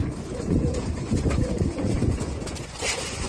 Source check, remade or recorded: remade